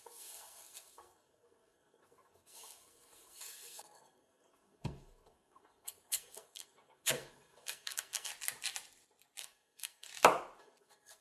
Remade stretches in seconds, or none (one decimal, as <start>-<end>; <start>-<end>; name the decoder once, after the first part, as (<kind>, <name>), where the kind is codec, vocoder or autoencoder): 0.0-8.3 (codec, SNAC); 9.4-10.1; 10.6-11.2